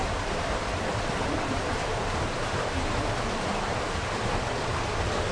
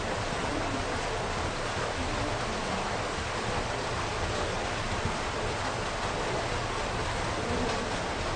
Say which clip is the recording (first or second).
second